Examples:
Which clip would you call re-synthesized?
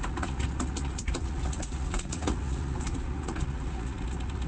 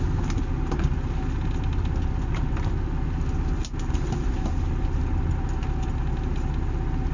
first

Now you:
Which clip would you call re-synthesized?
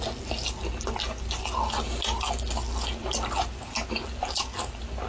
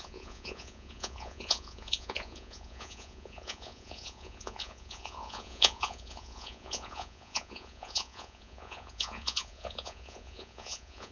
second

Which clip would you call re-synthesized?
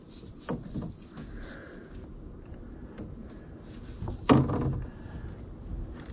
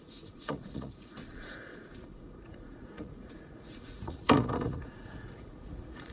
second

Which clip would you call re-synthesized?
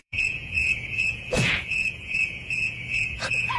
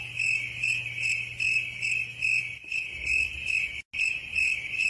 first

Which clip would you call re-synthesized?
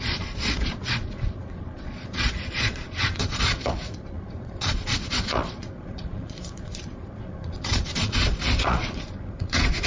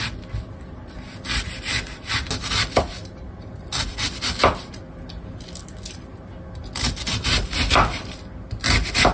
first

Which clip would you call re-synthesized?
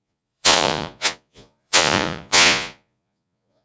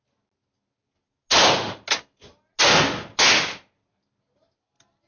first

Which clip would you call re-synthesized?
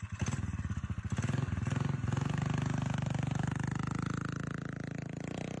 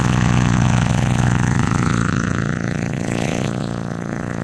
second